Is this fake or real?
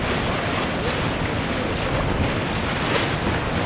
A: real